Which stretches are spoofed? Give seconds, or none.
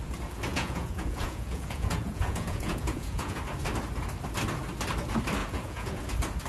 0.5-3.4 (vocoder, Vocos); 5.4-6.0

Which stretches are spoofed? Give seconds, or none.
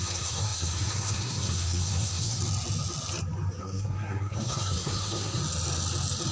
0.0-2.4 (codec, SNAC); 3.6-5.4